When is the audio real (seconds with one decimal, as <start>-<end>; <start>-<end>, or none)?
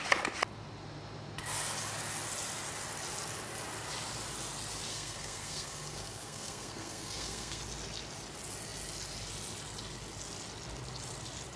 0.0-4.9; 7.6-11.6